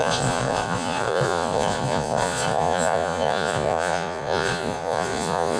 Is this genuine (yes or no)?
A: no